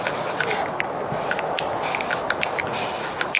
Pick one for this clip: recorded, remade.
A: recorded